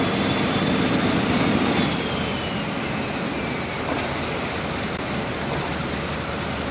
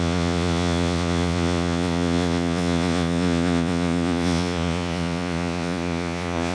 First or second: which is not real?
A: second